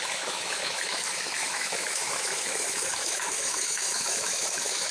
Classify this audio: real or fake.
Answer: fake